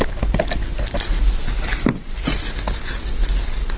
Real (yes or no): yes